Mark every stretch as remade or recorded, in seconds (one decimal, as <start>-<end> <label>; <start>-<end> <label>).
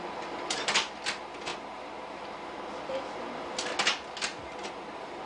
0.0-5.3 recorded